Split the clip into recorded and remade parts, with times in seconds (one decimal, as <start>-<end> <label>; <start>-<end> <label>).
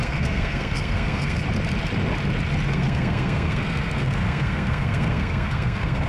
0.0-1.4 remade; 1.4-2.7 recorded; 2.7-6.1 remade